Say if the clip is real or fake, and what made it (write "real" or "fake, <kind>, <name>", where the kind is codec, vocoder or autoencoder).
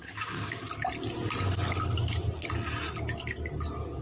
real